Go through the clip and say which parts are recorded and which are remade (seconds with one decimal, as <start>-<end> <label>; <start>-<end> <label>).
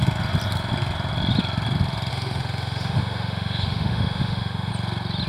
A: 0.0-2.1 recorded; 2.1-4.7 remade; 4.7-5.3 recorded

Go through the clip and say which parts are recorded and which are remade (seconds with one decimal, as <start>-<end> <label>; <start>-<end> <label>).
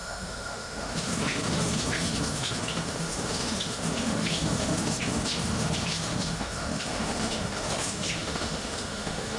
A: 0.0-9.4 remade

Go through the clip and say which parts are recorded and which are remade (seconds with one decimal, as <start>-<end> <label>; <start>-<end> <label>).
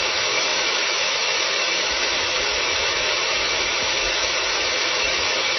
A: 0.0-5.6 remade